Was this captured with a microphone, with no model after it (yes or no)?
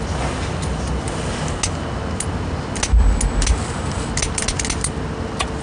yes